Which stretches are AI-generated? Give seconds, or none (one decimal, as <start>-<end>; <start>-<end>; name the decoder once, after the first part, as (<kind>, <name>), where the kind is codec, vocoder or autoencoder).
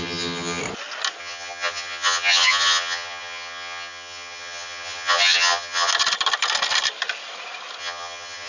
0.0-0.6 (vocoder, HiFi-GAN); 1.2-5.9; 7.8-8.5